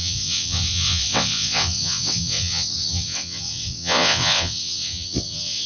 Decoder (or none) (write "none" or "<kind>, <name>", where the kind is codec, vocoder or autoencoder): vocoder, WaveNeXt